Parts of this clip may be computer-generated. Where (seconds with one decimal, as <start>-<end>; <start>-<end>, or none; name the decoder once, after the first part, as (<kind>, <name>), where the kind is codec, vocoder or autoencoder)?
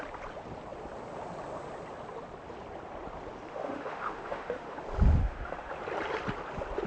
3.5-4.8 (autoencoder, DAC-VAE); 5.2-5.7